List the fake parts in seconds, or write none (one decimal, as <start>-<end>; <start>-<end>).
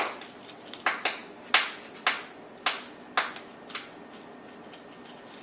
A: none